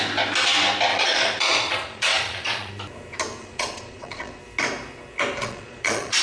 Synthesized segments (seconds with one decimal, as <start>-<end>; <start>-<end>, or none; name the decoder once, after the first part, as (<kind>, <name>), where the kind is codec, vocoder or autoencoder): 0.9-2.7 (vocoder, Vocos); 3.4-4.4; 5.4-6.2